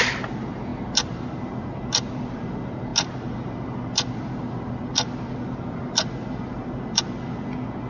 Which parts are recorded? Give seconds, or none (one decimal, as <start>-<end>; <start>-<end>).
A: 0.0-7.9